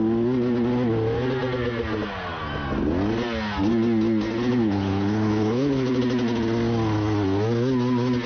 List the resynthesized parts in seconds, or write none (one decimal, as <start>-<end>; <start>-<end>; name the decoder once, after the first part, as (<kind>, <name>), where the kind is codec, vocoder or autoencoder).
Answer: 4.5-6.0 (codec, HILCodec)